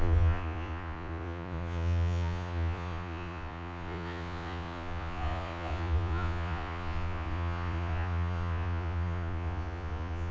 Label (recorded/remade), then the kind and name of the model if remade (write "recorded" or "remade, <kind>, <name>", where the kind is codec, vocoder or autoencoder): remade, vocoder, Vocos